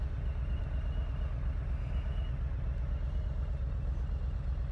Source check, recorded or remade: recorded